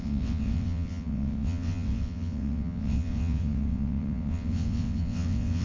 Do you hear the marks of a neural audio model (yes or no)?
yes